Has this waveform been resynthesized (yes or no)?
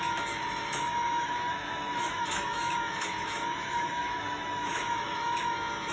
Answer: yes